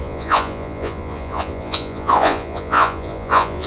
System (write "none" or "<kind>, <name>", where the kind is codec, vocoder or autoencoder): vocoder, Vocos